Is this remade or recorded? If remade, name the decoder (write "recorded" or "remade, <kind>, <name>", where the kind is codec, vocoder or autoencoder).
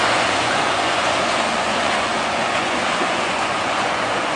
remade, vocoder, Vocos